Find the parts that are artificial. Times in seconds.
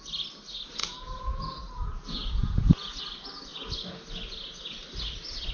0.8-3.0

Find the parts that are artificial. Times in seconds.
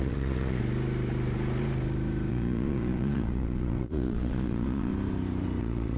0.0-0.6; 2.3-4.9; 5.6-6.0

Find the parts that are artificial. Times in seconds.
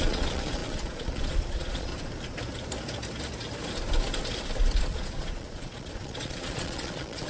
0.0-1.9; 4.8-7.3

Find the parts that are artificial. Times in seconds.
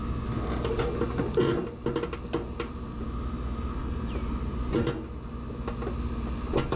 none